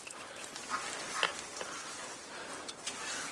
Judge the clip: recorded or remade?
recorded